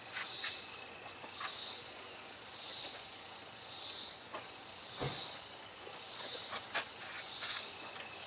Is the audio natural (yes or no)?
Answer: no